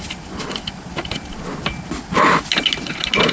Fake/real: real